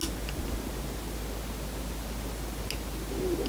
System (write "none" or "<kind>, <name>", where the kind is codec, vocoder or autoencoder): none